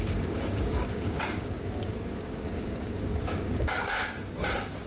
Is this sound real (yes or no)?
no